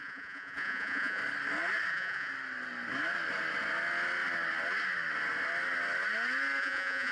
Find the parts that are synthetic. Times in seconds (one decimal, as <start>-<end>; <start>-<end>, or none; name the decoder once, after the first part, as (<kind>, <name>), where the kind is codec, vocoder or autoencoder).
0.0-1.2 (vocoder, Vocos); 1.9-2.3; 6.6-7.1